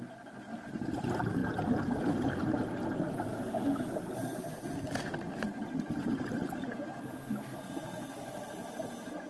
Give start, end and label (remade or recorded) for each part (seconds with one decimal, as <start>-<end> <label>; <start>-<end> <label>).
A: 0.0-9.3 recorded